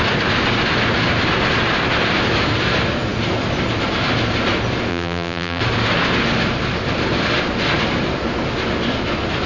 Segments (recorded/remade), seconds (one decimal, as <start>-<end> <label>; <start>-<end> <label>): 0.0-4.9 recorded; 4.9-5.6 remade; 5.6-9.5 recorded